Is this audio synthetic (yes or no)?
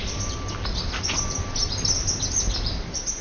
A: no